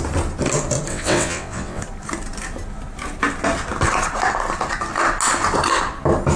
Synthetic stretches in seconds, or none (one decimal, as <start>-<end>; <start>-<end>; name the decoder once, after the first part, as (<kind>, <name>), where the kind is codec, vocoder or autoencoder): 0.9-1.8 (vocoder, WaveNeXt)